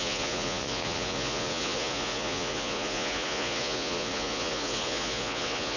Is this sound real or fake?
fake